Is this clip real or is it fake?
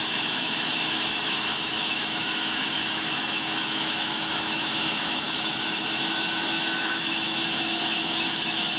fake